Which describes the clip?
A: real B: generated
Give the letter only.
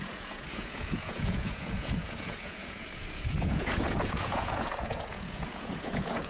B